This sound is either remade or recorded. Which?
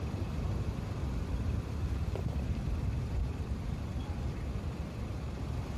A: remade